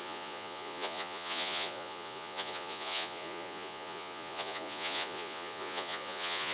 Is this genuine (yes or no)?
no